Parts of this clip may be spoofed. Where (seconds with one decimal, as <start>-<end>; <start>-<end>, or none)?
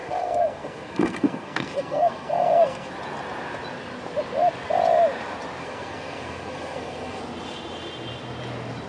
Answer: 0.0-2.9; 5.6-7.2